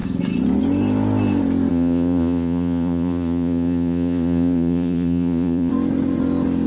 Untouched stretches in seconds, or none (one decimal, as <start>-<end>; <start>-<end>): 0.0-1.7; 5.7-6.7